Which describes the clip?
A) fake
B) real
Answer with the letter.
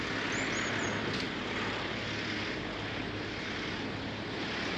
B